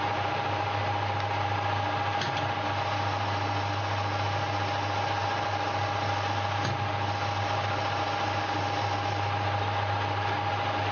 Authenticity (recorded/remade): recorded